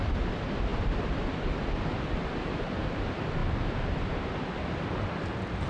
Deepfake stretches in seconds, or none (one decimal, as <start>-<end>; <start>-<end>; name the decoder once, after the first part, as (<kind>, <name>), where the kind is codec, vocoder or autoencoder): none